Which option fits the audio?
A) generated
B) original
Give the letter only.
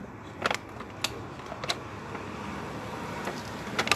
B